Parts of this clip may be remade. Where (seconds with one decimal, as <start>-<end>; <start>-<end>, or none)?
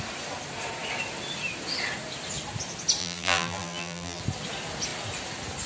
3.0-4.2